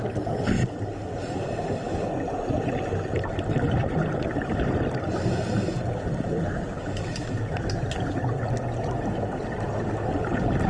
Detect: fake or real real